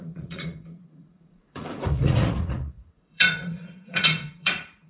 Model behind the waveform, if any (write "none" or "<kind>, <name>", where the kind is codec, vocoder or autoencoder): vocoder, Vocos